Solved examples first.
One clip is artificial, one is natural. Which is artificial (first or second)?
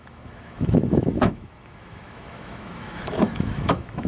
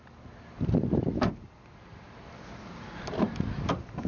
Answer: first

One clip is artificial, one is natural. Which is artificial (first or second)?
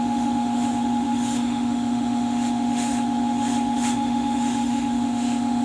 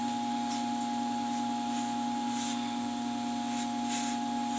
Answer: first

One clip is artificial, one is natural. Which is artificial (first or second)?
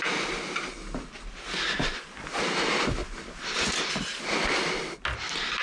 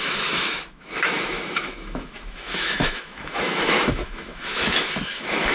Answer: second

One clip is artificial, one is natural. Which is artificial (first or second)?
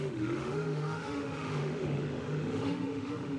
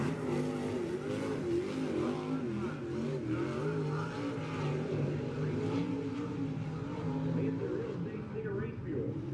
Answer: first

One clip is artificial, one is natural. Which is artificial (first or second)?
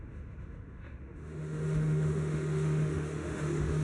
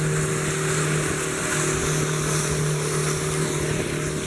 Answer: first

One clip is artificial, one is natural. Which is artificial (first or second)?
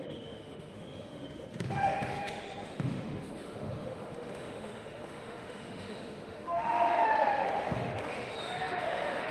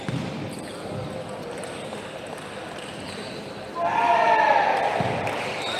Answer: first